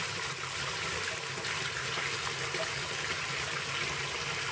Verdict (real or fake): real